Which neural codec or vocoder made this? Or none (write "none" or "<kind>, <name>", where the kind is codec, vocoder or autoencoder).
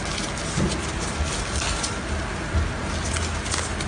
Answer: none